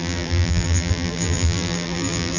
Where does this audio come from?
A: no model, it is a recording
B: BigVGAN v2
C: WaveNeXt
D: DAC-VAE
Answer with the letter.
B